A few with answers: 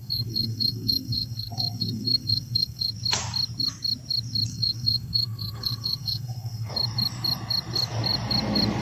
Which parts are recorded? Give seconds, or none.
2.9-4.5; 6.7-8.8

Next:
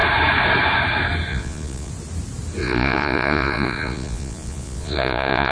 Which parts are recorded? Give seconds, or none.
0.0-1.3; 1.9-2.6

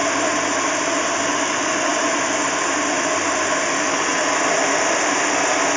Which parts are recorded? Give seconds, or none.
0.0-5.8

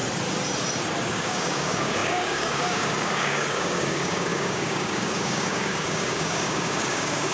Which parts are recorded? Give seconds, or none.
0.0-1.1